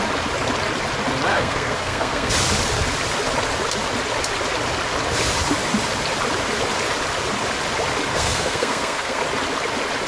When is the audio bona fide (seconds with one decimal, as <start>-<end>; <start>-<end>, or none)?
0.0-1.3; 2.3-8.1; 9.2-10.1